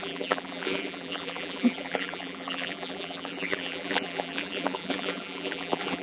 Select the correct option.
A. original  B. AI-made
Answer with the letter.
B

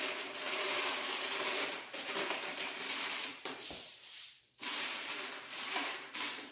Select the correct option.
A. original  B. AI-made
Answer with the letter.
B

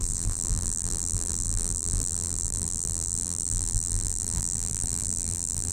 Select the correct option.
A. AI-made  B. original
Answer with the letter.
A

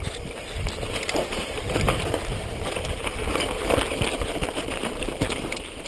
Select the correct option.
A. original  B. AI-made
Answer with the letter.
B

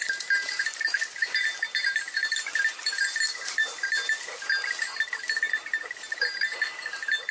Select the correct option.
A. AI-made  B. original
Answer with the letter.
A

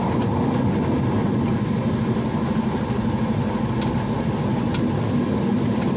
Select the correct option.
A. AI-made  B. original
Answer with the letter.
B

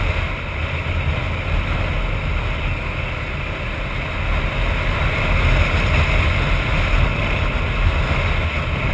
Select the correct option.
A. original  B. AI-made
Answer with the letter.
A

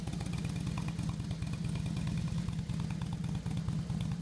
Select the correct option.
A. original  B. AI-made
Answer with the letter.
A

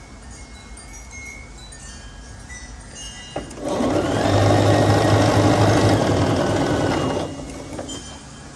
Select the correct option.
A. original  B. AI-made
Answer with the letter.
A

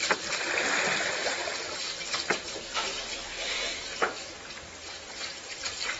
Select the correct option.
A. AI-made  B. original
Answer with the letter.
A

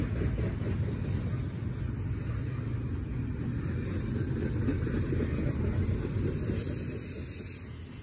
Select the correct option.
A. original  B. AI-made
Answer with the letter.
A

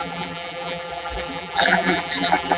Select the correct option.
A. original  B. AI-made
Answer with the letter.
B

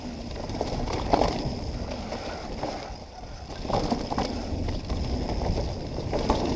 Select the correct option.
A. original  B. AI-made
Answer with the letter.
B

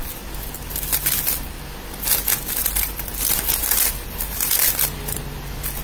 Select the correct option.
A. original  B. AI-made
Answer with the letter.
B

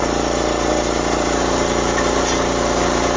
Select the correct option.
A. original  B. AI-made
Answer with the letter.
B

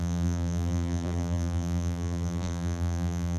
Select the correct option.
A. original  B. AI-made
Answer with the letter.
B